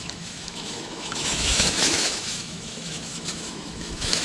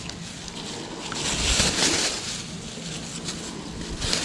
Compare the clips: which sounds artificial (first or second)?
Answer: first